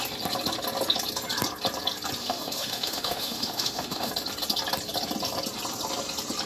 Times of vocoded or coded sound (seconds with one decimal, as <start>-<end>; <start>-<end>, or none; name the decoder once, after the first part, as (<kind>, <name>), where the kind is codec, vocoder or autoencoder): 2.2-4.1 (autoencoder, DAC-VAE)